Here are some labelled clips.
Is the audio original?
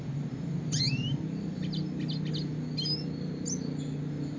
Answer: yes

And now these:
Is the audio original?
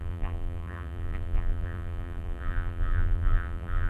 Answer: no